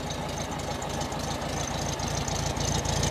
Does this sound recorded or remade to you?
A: recorded